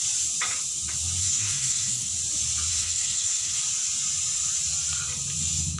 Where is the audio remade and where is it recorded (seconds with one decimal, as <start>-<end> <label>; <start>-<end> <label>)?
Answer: 0.0-1.2 recorded; 1.2-2.1 remade; 2.1-2.7 recorded; 2.7-3.6 remade; 3.6-5.8 recorded